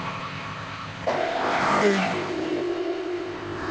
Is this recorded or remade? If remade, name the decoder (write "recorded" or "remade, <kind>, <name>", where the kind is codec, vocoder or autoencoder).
remade, codec, ZipCodec